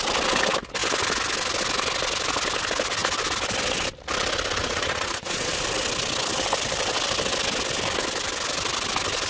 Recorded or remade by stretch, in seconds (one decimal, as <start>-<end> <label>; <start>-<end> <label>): 0.0-4.6 recorded; 4.6-5.5 remade; 5.5-9.3 recorded